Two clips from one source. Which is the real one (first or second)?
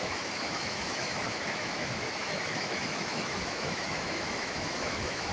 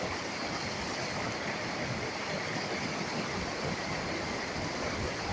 second